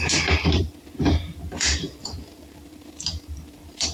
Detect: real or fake fake